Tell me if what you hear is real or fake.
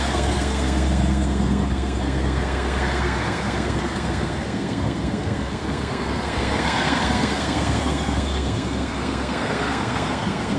fake